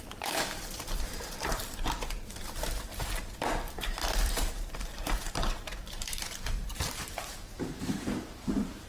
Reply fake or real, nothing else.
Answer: fake